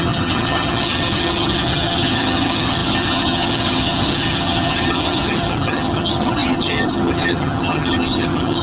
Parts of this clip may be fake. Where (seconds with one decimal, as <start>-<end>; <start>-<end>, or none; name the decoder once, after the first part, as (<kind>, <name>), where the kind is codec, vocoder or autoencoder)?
0.0-8.6 (vocoder, HiFi-GAN)